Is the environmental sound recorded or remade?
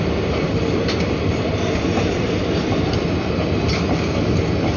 recorded